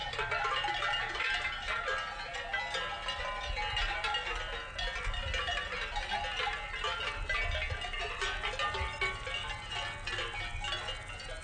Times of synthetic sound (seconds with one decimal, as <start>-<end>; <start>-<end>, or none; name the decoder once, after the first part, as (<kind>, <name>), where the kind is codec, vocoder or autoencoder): 0.0-1.8 (vocoder, BigVGAN v2)